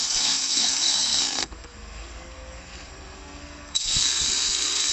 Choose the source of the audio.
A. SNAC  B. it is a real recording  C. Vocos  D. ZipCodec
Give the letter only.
A